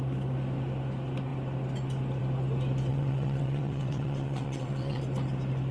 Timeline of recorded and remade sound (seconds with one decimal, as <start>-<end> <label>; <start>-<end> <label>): 0.0-2.9 recorded; 2.9-5.0 remade; 5.0-5.7 recorded